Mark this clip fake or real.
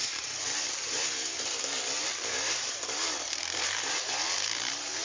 fake